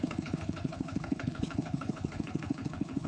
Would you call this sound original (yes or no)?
no